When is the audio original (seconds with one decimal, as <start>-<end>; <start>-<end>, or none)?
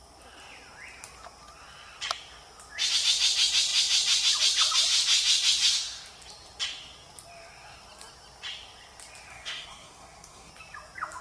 0.0-9.3; 10.5-11.2